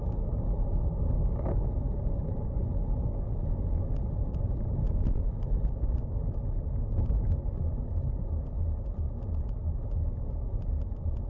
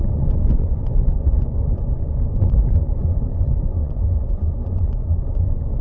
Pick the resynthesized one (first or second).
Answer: second